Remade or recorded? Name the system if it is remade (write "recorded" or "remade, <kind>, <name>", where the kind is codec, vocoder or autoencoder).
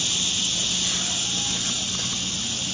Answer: recorded